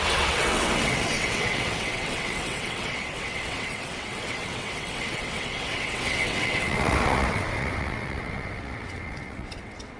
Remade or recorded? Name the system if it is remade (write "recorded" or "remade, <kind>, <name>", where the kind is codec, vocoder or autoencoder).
remade, vocoder, WaveNeXt